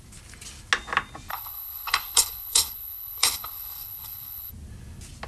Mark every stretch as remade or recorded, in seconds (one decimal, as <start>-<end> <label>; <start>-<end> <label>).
0.0-1.3 recorded; 1.3-4.5 remade; 4.5-5.3 recorded